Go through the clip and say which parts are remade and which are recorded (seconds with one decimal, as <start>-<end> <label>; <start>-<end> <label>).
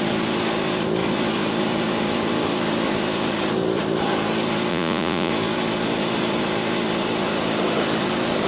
0.0-4.7 recorded; 4.7-5.3 remade; 5.3-8.5 recorded